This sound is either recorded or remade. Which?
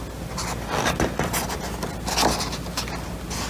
recorded